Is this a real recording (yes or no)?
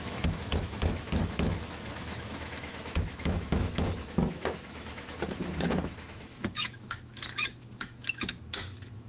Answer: no